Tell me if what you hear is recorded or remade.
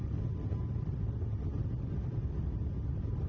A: recorded